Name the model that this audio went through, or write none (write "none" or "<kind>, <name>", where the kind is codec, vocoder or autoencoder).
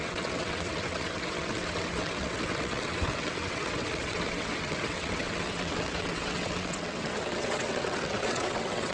vocoder, WaveNeXt